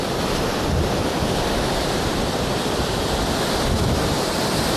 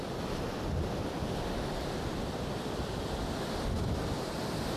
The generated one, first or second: first